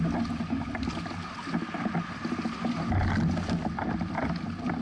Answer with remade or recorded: recorded